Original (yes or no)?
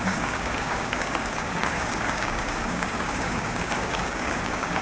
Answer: no